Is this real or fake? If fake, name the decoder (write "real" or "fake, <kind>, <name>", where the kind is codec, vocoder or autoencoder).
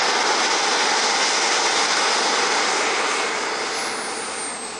real